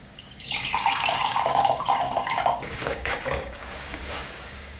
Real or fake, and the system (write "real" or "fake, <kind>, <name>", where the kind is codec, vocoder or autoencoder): fake, codec, DAC